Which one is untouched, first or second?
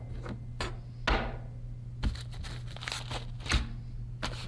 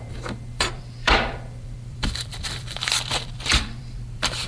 first